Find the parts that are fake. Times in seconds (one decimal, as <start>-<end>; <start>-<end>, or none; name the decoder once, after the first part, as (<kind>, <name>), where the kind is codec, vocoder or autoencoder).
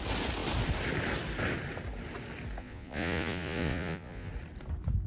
2.6-4.3 (vocoder, Vocos)